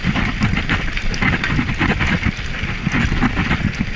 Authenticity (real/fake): real